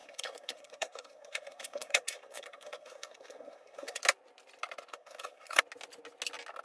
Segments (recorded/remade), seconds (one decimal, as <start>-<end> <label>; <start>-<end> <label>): 0.0-4.0 remade; 4.0-4.9 recorded; 4.9-5.6 remade; 5.6-6.6 recorded